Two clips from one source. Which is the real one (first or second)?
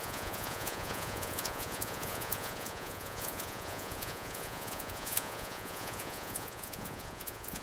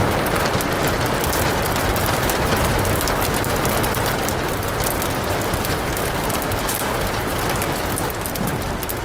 second